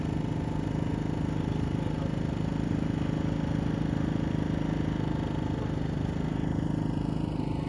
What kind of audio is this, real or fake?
real